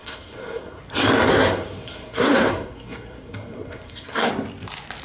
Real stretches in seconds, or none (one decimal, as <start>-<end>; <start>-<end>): 0.8-1.3; 4.3-5.0